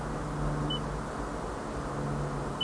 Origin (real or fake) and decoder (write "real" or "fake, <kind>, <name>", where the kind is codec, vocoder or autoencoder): real